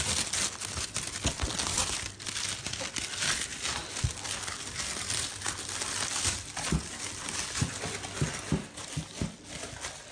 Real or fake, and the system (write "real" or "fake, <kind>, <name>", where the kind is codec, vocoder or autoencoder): real